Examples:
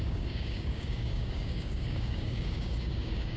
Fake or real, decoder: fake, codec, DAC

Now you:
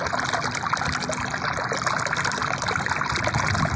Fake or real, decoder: real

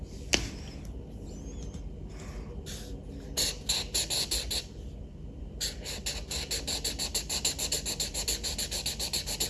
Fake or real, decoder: real